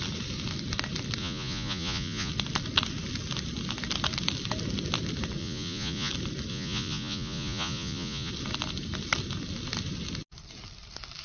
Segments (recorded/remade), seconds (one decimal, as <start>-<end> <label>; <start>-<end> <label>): 0.0-1.2 recorded; 1.2-2.3 remade; 2.3-5.4 recorded; 5.4-6.1 remade; 6.1-6.5 recorded; 6.5-8.3 remade; 8.3-11.2 recorded